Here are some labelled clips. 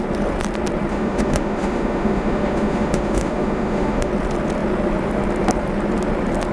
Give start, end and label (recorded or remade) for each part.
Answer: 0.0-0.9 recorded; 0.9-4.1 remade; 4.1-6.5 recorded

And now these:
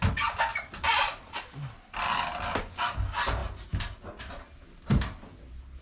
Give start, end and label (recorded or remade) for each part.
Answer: 0.0-0.5 recorded; 0.5-1.9 remade; 1.9-5.8 recorded